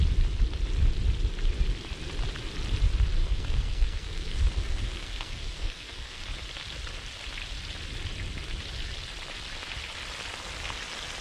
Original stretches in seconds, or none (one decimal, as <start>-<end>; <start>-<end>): 0.0-3.2; 6.2-11.2